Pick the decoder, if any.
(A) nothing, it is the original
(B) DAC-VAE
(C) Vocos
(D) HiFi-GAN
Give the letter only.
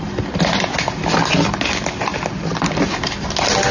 A